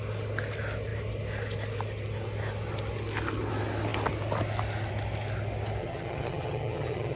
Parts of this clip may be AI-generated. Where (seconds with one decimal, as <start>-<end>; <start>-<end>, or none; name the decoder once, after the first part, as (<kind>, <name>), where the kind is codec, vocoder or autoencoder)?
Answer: 5.8-7.2 (vocoder, HiFi-GAN)